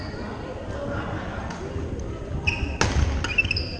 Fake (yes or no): no